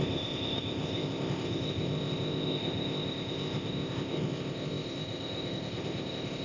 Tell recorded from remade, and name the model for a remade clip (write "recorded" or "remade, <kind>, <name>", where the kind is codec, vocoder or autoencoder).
remade, codec, ZipCodec